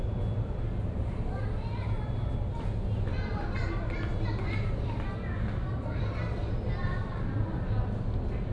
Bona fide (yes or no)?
yes